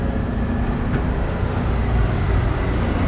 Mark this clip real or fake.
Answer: real